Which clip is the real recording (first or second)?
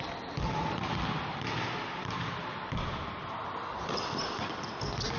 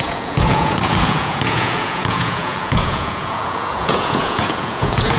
first